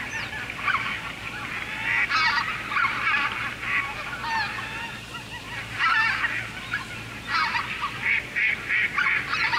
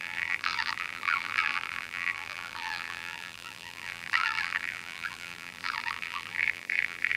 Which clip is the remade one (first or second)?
second